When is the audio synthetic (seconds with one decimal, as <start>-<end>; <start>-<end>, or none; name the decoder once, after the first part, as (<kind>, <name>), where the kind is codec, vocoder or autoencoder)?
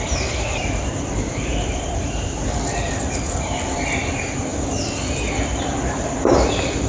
0.0-6.9 (vocoder, BigVGAN v2)